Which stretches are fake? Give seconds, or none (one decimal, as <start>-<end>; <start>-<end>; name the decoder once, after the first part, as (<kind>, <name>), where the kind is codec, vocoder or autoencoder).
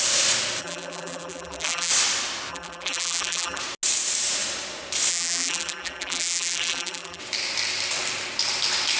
0.6-1.9 (vocoder, BigVGAN v2); 2.5-3.6; 5.1-7.2